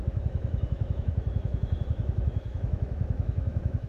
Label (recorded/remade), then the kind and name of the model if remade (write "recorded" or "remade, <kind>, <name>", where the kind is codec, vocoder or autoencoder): remade, autoencoder, DAC-VAE